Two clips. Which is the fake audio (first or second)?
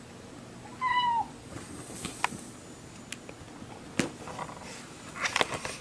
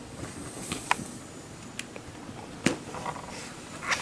second